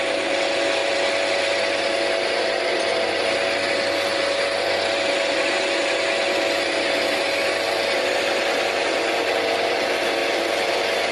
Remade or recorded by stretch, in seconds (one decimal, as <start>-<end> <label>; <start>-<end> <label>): 0.0-11.1 recorded